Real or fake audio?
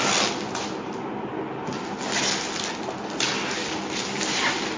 real